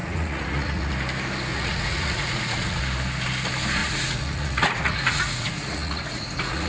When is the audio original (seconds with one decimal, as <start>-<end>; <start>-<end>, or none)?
0.9-1.5; 2.8-3.8